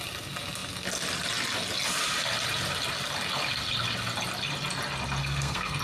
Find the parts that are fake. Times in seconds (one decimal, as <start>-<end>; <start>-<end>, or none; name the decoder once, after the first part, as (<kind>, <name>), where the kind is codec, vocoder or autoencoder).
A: 5.2-5.8 (codec, SNAC)